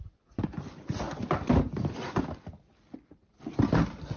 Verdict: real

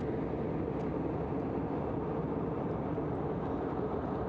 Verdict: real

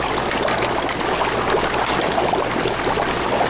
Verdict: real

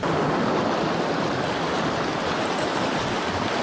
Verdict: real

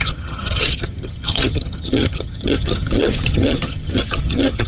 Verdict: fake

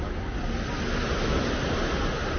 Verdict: real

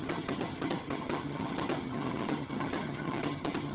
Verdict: fake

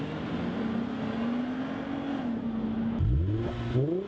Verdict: real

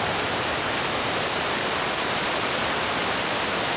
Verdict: real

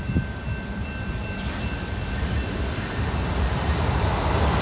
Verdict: real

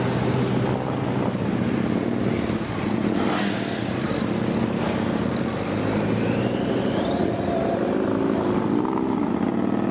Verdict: real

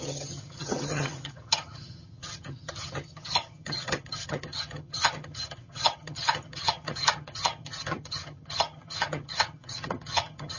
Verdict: fake